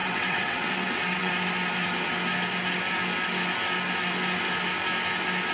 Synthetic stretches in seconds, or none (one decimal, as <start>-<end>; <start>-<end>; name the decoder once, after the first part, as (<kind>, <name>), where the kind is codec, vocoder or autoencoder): 0.0-1.3 (vocoder, WaveNeXt)